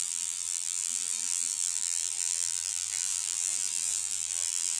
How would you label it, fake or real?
fake